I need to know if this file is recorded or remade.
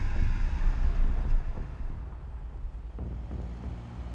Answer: recorded